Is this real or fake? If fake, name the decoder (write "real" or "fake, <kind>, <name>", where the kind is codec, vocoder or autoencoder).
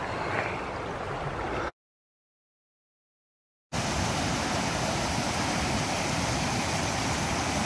real